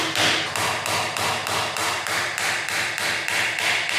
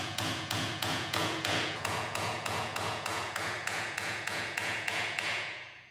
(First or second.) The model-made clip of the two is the second